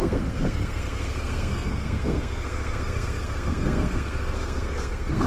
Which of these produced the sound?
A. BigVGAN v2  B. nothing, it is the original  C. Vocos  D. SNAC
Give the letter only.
D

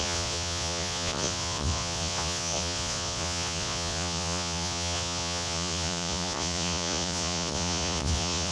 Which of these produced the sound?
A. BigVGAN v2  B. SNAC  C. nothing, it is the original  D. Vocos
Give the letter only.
D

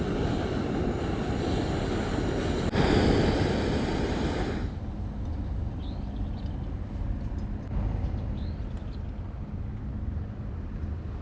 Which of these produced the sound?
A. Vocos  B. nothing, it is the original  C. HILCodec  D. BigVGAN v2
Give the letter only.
B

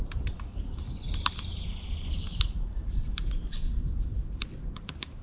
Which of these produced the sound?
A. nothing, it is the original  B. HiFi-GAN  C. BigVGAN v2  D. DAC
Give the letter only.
C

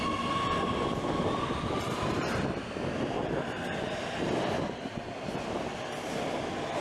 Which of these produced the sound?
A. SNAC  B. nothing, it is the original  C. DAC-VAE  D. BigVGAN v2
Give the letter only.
B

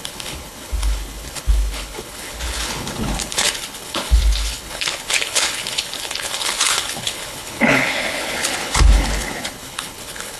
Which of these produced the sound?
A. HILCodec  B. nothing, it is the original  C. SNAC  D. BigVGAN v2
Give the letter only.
A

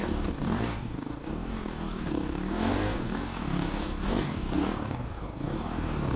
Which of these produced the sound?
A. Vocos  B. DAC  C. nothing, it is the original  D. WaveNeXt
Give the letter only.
B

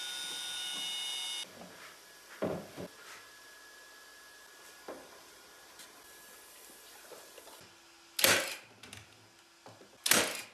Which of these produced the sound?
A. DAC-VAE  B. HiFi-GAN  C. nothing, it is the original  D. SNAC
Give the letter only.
C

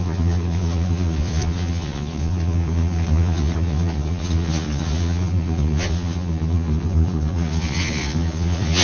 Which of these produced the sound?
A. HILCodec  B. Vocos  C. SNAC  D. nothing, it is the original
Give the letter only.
B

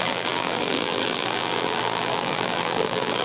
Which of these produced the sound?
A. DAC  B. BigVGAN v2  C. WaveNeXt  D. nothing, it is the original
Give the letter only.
B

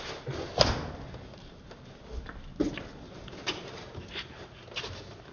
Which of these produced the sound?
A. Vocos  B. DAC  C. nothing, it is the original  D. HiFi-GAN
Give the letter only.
C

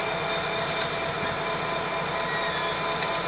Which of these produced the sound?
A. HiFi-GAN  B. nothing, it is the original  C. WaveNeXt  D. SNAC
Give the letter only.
B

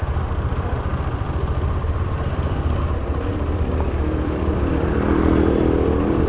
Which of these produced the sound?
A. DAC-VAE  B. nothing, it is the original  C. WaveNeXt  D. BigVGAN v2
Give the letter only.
D